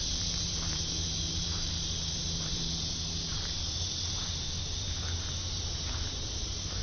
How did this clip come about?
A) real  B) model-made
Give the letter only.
B